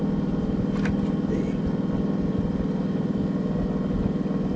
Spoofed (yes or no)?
no